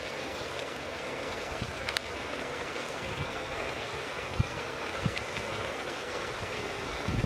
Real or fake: fake